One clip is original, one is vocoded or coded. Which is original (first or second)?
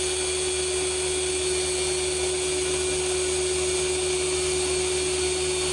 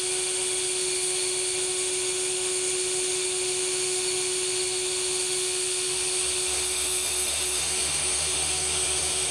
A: first